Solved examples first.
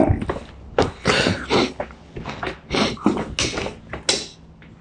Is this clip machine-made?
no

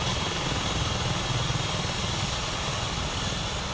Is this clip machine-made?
no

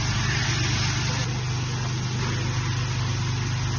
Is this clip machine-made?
no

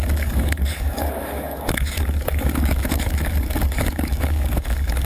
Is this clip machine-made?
yes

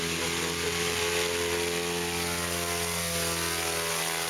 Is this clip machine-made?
no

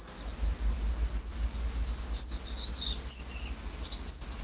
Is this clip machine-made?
no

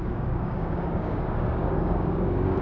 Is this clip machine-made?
yes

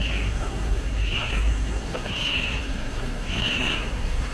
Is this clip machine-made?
yes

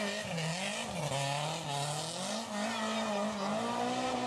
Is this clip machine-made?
no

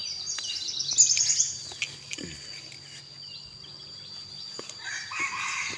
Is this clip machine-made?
no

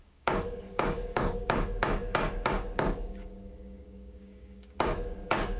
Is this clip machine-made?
yes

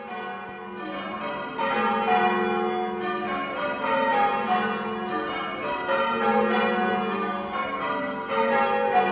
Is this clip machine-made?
no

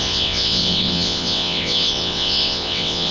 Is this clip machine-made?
yes